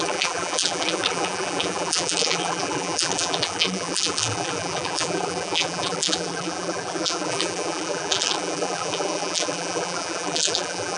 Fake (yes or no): yes